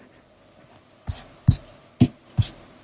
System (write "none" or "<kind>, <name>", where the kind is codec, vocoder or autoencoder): none